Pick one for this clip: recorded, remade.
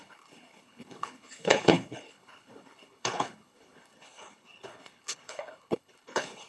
remade